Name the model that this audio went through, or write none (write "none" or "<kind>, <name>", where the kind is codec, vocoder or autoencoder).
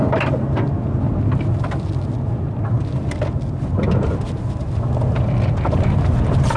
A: none